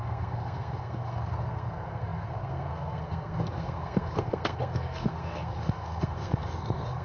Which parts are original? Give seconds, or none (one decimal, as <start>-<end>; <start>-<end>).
none